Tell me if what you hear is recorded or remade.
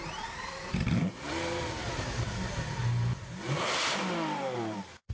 remade